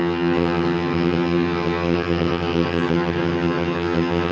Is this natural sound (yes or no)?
no